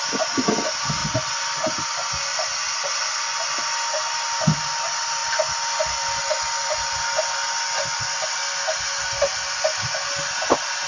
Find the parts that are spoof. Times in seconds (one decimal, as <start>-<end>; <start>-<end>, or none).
none